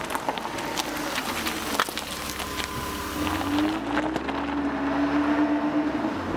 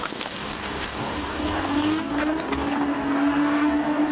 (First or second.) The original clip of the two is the first